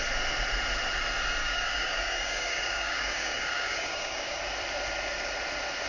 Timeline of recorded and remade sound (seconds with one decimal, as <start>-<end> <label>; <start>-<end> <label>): 0.0-1.4 recorded; 1.4-4.4 remade; 4.4-5.9 recorded